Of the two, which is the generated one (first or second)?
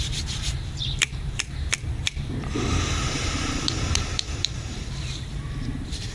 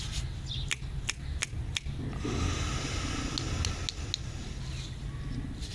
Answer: first